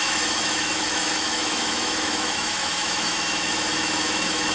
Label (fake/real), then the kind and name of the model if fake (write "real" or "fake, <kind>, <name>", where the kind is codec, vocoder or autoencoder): fake, autoencoder, DAC-VAE